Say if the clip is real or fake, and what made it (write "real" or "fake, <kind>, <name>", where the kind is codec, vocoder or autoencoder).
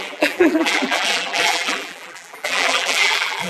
fake, vocoder, BigVGAN v2